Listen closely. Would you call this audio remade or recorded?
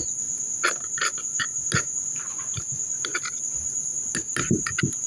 recorded